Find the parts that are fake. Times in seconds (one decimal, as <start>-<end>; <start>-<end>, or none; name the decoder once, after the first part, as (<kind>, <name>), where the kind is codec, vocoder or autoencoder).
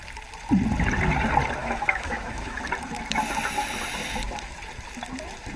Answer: 1.6-2.6 (autoencoder, DAC-VAE)